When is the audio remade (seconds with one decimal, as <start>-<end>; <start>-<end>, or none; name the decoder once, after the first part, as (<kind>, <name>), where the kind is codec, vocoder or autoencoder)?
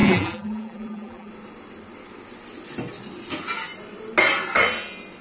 0.0-1.3 (vocoder, BigVGAN v2)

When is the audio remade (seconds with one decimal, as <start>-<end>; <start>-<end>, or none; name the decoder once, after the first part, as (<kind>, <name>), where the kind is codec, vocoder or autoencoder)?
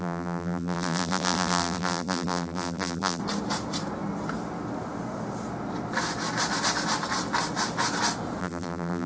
0.0-3.2 (vocoder, BigVGAN v2); 8.4-9.1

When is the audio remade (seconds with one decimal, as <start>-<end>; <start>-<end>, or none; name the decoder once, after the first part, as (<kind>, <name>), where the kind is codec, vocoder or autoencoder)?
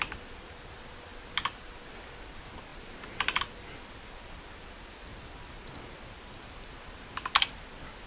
none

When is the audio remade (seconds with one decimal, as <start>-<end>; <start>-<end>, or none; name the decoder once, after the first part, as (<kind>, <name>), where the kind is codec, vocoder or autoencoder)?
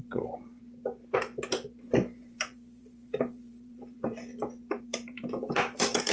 0.0-0.6 (vocoder, BigVGAN v2); 2.2-4.3; 4.8-6.1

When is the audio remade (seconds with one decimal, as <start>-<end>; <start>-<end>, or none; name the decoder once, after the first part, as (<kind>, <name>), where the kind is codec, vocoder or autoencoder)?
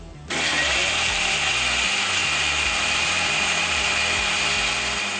0.5-1.5 (vocoder, BigVGAN v2); 2.2-4.0